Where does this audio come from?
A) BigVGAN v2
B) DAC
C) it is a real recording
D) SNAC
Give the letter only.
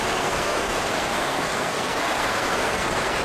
D